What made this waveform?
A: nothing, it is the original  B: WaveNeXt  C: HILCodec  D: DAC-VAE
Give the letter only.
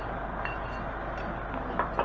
A